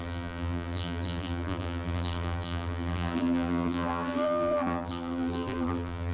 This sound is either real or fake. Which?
fake